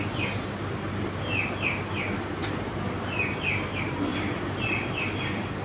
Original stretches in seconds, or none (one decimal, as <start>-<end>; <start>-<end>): 0.0-5.6